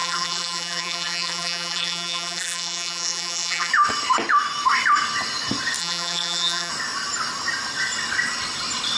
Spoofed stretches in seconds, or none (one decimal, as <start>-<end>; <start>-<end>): 0.0-3.7; 5.8-6.7